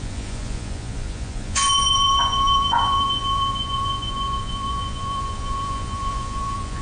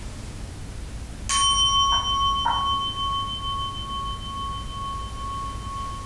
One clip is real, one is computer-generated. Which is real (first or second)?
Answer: second